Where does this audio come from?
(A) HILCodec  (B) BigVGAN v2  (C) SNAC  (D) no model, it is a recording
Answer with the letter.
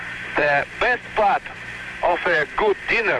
B